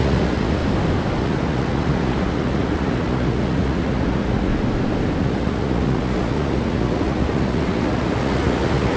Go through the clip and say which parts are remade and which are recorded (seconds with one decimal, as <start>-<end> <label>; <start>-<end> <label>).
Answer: 0.0-0.6 remade; 0.6-1.2 recorded; 1.2-4.5 remade; 4.5-5.2 recorded; 5.2-9.0 remade